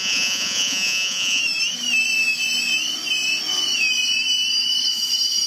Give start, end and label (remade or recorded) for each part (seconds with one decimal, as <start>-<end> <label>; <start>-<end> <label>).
0.0-1.4 remade; 1.4-5.5 recorded